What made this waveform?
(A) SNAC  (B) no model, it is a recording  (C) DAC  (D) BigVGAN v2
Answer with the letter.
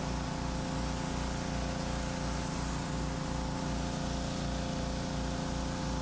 B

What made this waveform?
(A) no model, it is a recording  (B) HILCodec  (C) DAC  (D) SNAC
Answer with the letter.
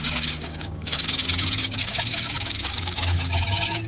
C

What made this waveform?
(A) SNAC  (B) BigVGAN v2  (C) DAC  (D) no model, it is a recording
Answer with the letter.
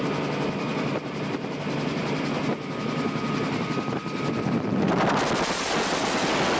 D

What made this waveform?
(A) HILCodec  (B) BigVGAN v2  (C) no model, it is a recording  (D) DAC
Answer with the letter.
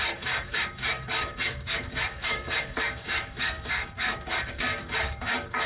D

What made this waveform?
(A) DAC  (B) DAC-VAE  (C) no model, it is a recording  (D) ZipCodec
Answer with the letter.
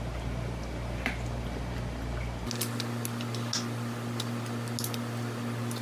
C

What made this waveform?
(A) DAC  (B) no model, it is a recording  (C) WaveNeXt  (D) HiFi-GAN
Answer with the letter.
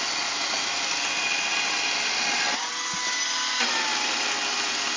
B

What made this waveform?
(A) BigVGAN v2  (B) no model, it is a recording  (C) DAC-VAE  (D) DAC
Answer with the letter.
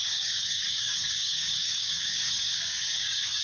D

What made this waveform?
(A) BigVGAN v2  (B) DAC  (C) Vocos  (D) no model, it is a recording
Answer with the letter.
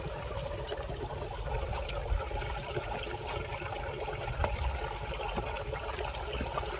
D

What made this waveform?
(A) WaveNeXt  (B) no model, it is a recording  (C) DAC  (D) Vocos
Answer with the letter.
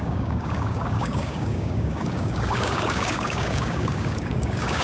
C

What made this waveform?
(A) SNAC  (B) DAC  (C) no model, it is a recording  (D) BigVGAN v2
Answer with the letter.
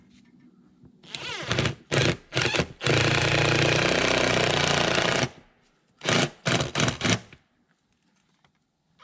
C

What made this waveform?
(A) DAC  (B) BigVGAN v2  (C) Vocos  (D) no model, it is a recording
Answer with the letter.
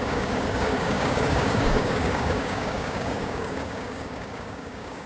A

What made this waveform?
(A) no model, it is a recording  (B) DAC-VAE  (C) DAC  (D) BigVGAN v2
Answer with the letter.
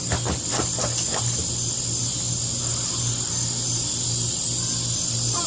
A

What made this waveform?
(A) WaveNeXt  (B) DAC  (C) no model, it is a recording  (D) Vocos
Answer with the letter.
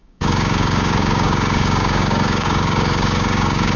B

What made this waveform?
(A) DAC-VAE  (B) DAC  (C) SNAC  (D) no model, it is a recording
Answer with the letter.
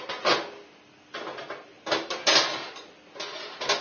D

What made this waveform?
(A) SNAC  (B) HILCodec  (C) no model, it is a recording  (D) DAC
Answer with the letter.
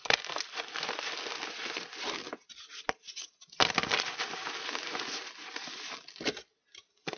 C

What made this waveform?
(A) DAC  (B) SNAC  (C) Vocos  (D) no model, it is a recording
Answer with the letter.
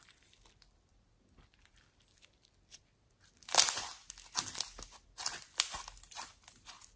D